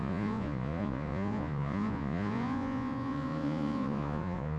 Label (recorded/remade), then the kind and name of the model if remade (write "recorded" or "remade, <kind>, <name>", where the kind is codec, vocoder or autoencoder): remade, vocoder, Vocos